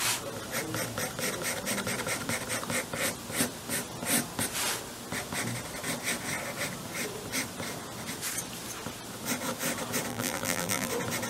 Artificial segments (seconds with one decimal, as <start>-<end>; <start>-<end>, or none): 10.1-10.9